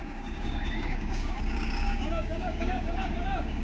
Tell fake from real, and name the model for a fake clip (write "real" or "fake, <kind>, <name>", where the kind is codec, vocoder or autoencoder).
fake, codec, DAC